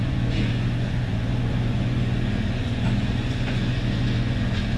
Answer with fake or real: fake